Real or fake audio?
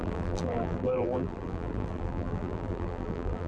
fake